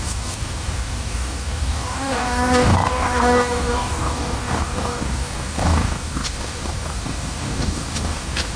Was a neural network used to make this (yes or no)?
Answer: yes